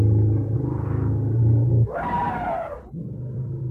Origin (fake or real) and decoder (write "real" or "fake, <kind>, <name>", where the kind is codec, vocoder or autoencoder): real